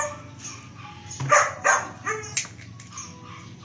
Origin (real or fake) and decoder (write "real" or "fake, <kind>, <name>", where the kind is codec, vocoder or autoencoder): real